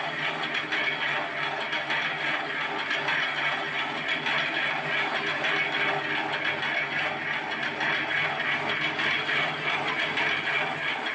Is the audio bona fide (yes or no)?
yes